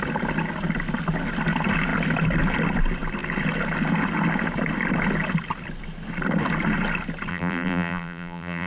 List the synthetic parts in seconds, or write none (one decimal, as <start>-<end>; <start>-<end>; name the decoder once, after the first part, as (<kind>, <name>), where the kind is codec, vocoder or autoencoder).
7.3-8.7 (vocoder, BigVGAN v2)